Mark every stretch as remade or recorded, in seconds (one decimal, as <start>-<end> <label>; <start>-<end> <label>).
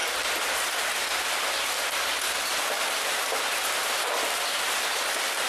0.0-2.4 recorded; 2.4-5.5 remade